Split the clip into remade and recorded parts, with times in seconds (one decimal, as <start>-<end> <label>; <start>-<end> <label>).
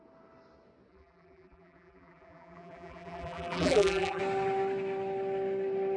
0.0-0.9 recorded; 0.9-4.2 remade; 4.2-6.0 recorded